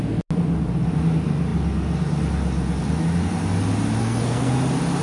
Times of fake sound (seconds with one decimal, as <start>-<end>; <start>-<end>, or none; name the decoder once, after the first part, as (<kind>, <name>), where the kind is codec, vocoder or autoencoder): 4.0-4.5 (codec, SNAC)